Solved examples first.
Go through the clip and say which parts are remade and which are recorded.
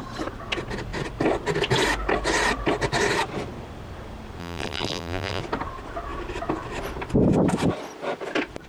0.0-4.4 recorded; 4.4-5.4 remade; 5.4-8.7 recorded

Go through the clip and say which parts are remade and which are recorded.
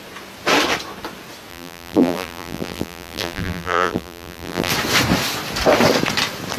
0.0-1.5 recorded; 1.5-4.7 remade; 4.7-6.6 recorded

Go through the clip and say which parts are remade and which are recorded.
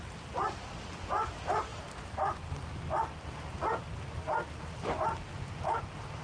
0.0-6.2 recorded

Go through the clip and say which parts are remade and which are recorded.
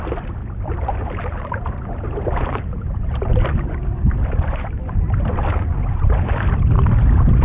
0.0-0.4 recorded; 0.4-4.8 remade; 4.8-7.4 recorded